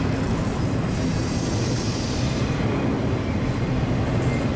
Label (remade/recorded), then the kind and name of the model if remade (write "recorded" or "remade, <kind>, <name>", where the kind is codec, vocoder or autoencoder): recorded